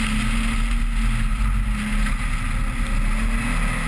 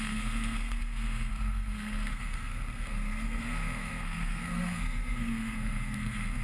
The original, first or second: first